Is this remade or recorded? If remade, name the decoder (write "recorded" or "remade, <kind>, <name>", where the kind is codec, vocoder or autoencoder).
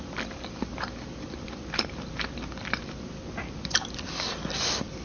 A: recorded